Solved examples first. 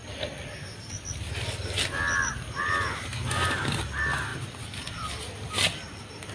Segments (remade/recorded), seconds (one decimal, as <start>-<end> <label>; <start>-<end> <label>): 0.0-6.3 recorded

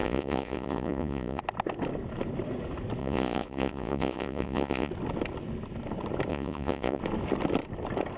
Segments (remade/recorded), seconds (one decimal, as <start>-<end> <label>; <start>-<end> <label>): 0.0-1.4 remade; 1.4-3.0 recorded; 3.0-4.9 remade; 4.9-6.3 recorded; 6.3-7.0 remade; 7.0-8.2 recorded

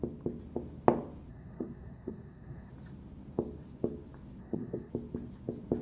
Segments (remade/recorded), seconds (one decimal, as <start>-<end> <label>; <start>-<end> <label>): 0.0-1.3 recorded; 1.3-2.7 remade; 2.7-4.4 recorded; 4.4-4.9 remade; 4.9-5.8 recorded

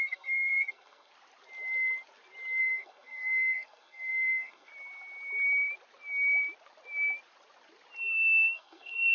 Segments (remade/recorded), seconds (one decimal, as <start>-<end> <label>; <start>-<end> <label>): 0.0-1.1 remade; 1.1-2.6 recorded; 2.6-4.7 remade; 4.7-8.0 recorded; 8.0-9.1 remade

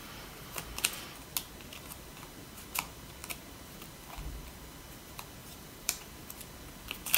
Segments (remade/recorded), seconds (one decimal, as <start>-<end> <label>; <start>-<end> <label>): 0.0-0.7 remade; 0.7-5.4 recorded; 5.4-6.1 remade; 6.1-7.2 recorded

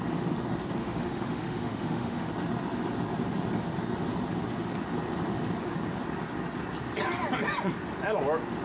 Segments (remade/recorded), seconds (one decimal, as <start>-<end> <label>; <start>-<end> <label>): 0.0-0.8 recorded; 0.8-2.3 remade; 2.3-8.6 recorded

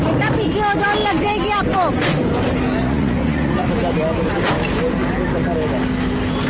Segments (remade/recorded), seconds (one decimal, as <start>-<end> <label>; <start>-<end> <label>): 0.0-2.8 recorded; 2.8-3.7 remade; 3.7-6.5 recorded